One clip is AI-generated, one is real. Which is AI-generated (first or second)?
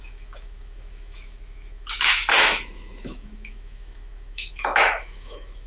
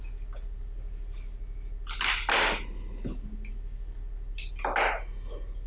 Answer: first